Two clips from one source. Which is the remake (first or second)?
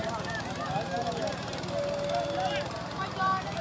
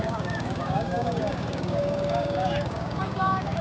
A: second